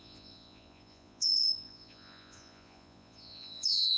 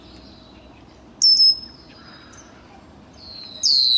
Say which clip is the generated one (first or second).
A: first